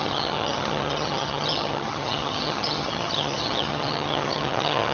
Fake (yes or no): yes